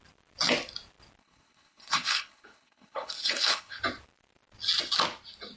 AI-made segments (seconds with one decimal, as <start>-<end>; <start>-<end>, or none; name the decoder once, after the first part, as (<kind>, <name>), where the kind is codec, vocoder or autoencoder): 1.2-3.8 (codec, HILCodec)